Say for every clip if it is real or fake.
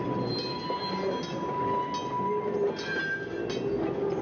real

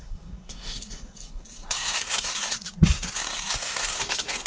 fake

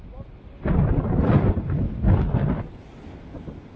real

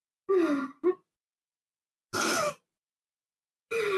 real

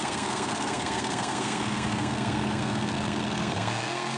fake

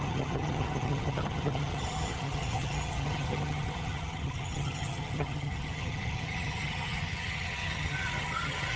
fake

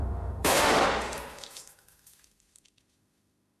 fake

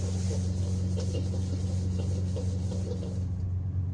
real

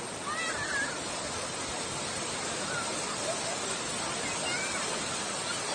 real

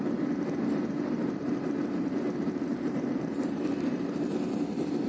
fake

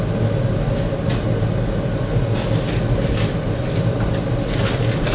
real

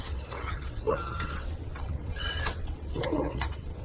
fake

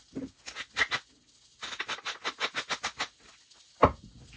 real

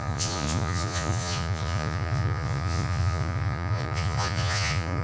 fake